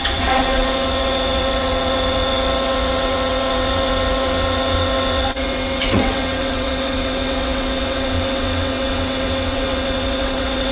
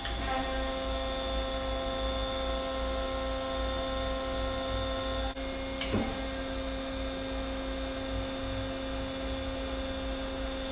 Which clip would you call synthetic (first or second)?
first